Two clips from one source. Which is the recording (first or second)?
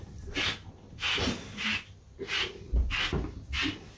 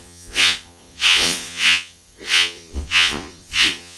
first